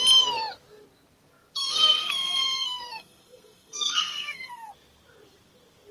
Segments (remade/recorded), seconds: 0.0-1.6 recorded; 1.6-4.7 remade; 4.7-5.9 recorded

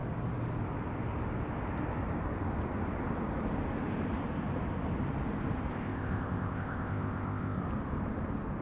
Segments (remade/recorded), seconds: 0.0-5.7 recorded; 5.7-7.6 remade; 7.6-8.6 recorded

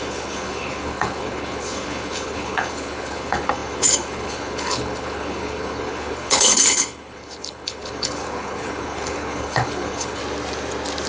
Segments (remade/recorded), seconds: 0.0-10.2 remade; 10.2-11.1 recorded

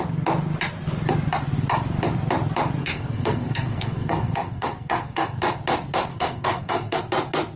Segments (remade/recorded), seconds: 0.0-2.8 recorded; 2.8-5.4 remade; 5.4-6.1 recorded; 6.1-7.0 remade; 7.0-7.6 recorded

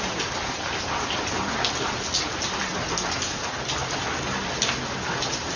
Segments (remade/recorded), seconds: 0.0-5.6 recorded

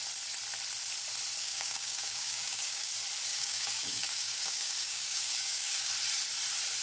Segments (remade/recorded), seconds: 0.0-1.4 recorded; 1.4-2.9 remade; 2.9-3.3 recorded; 3.3-5.9 remade; 5.9-6.8 recorded

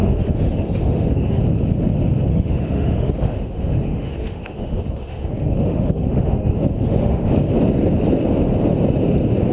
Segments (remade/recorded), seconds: 0.0-1.4 remade; 1.4-2.3 recorded; 2.3-7.5 remade; 7.5-9.5 recorded